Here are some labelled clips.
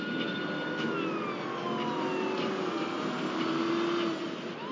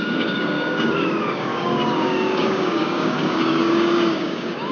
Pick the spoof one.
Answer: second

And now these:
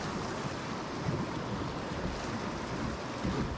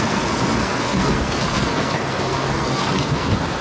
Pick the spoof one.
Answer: second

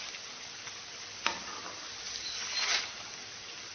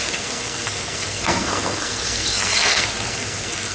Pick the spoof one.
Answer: second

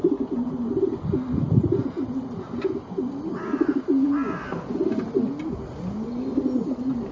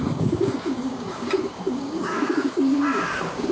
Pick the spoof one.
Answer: second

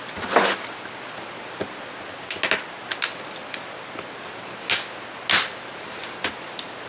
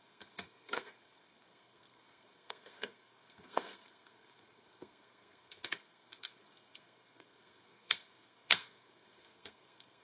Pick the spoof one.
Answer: second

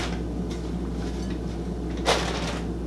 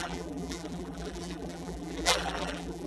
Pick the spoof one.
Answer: second